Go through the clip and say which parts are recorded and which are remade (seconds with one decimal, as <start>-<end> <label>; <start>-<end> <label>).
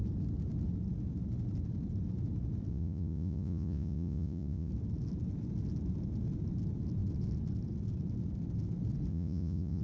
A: 0.0-2.7 recorded; 2.7-4.7 remade; 4.7-9.1 recorded; 9.1-9.8 remade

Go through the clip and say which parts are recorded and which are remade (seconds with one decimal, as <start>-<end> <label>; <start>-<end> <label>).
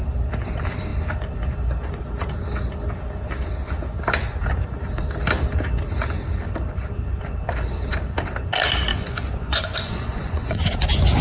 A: 0.0-8.9 recorded; 8.9-10.7 remade; 10.7-11.2 recorded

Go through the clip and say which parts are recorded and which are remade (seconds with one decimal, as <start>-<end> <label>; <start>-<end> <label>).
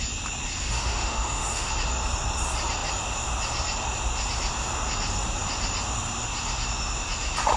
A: 0.0-0.6 recorded; 0.6-1.7 remade; 1.7-7.6 recorded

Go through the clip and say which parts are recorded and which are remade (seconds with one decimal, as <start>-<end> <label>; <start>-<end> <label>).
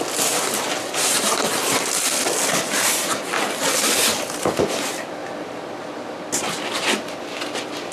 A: 0.0-5.2 recorded; 5.2-5.9 remade; 5.9-7.9 recorded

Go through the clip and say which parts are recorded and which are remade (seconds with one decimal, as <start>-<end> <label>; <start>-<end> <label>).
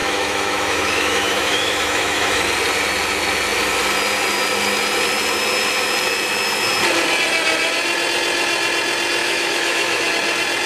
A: 0.0-2.4 remade; 2.4-9.2 recorded; 9.2-10.1 remade; 10.1-10.7 recorded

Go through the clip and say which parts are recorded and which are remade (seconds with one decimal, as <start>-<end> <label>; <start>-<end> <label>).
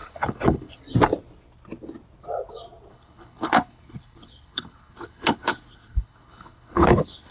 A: 0.0-0.8 remade; 0.8-2.9 recorded; 2.9-7.3 remade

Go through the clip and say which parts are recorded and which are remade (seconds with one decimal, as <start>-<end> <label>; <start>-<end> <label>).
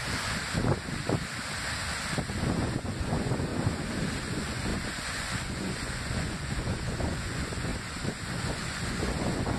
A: 0.0-0.4 remade; 0.4-2.3 recorded; 2.3-3.5 remade; 3.5-4.2 recorded; 4.2-9.6 remade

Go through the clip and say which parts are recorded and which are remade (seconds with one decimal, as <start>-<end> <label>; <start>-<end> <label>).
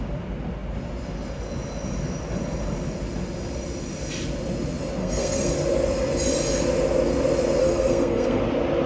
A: 0.0-5.0 recorded; 5.0-5.5 remade; 5.5-7.6 recorded; 7.6-8.4 remade; 8.4-8.9 recorded